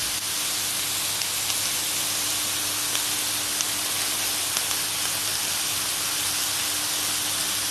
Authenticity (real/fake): real